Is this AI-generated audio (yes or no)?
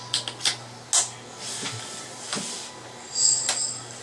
no